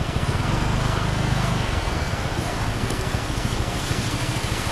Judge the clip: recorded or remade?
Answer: remade